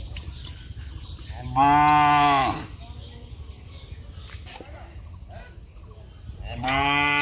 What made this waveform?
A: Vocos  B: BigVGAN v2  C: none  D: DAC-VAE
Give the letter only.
C